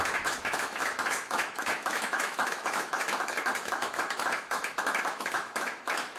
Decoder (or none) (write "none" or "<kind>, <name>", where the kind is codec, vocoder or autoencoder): autoencoder, DAC-VAE